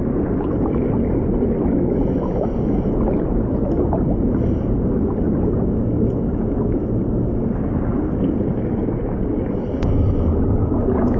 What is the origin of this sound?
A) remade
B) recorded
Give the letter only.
B